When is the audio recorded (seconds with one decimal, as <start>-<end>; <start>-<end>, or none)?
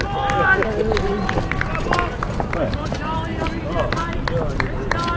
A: 0.0-5.2